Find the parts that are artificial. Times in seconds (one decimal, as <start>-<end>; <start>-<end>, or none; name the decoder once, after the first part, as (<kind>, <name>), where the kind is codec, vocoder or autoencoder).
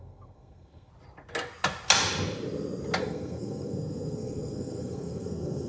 0.0-0.9 (codec, SNAC); 3.0-5.7